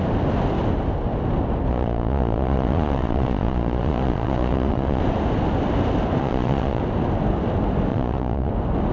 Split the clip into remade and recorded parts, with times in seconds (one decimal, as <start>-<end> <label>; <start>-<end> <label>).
0.0-1.7 recorded; 1.7-5.0 remade; 5.0-6.2 recorded; 6.2-6.8 remade; 6.8-7.9 recorded; 7.9-8.5 remade; 8.5-8.9 recorded